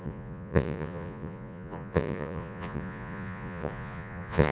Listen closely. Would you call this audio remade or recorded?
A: remade